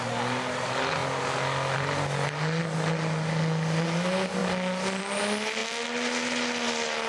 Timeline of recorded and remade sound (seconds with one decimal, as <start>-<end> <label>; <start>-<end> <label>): 0.0-7.1 recorded